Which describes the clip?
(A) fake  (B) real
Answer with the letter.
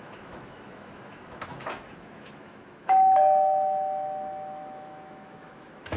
A